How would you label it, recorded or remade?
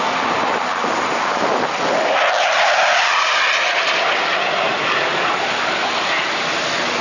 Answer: recorded